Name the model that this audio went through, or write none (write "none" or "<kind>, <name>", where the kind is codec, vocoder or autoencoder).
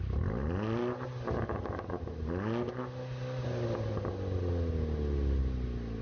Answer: none